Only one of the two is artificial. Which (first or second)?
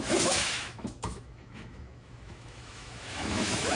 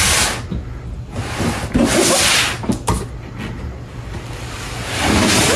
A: first